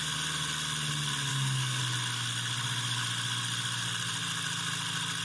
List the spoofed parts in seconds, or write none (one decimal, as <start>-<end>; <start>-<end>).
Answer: 1.3-1.8